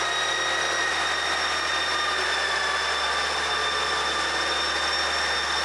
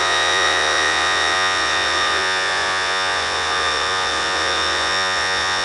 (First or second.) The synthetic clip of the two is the second